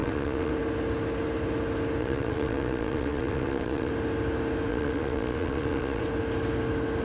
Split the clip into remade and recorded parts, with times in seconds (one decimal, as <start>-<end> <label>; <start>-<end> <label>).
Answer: 0.0-0.5 remade; 0.5-2.0 recorded; 2.0-3.9 remade; 3.9-4.7 recorded; 4.7-6.0 remade; 6.0-7.0 recorded